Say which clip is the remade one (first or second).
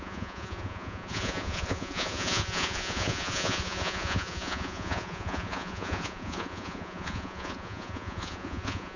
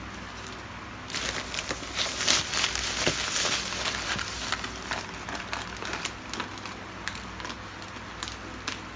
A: first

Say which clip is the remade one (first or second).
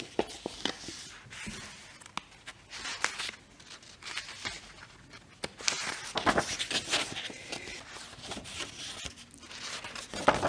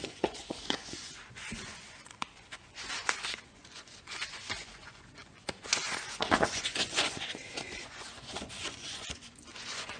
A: second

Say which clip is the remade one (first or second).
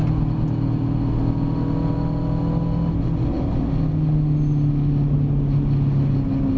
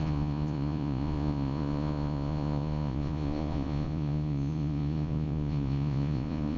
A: second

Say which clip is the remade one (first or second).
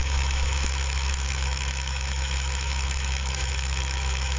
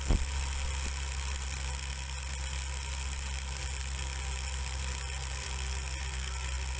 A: first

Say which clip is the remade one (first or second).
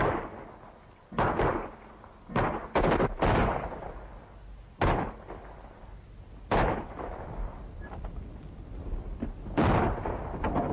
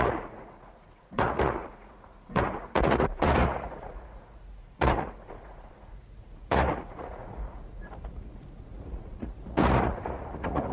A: second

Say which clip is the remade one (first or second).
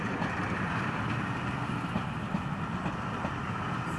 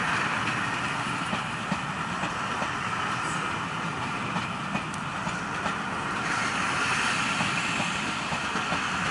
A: second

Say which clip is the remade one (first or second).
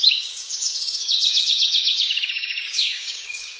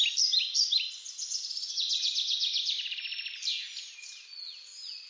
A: first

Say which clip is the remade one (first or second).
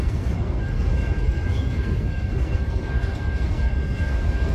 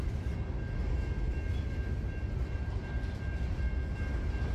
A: first